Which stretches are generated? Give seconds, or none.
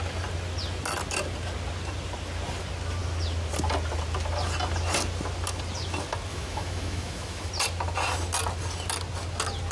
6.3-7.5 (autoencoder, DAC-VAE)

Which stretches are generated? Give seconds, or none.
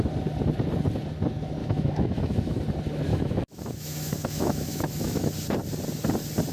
1.6-2.6 (autoencoder, DAC-VAE); 3.1-5.3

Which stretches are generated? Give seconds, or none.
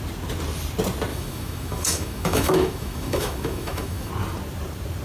1.1-4.1 (autoencoder, DAC-VAE)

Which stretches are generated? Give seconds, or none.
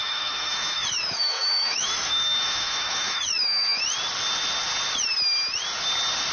0.0-3.8 (autoencoder, DAC-VAE)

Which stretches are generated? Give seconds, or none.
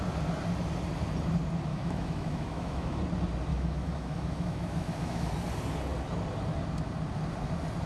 1.7-3.0 (autoencoder, DAC-VAE); 3.5-5.3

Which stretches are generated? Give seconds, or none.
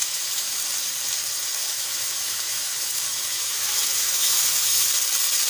0.0-0.6 (autoencoder, DAC-VAE); 1.6-4.9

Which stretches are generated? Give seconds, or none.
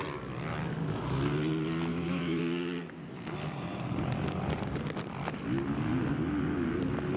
1.9-2.4 (autoencoder, DAC-VAE)